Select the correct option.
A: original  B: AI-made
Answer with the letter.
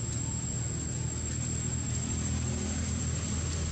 A